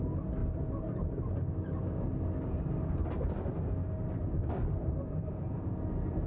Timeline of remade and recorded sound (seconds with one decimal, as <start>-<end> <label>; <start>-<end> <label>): 0.0-4.4 recorded; 4.4-5.7 remade; 5.7-6.3 recorded